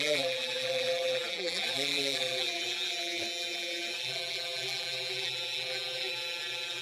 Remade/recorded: remade